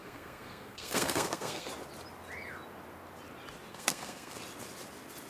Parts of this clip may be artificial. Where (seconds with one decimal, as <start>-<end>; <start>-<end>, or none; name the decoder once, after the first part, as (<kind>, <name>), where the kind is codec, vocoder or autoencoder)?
0.0-1.7 (codec, SNAC); 3.7-4.4